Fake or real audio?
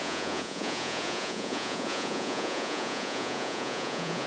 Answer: fake